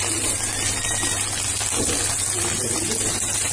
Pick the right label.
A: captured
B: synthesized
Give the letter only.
A